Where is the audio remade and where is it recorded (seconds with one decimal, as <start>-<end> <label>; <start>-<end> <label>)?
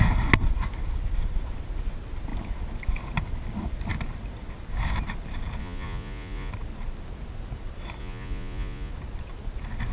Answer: 0.0-5.6 recorded; 5.6-6.5 remade; 6.5-8.0 recorded; 8.0-8.9 remade; 8.9-9.9 recorded